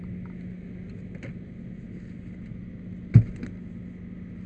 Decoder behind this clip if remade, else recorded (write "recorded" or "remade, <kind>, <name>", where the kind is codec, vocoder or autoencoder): recorded